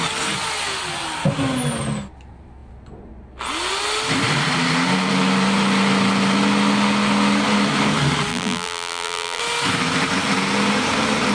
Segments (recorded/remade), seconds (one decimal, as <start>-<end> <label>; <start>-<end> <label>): 0.0-8.3 recorded; 8.3-9.4 remade; 9.4-11.3 recorded